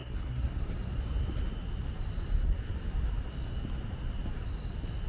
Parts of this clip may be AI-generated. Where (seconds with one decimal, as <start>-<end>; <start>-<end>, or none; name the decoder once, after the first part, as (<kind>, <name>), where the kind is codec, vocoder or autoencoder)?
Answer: 0.0-0.6 (codec, SNAC)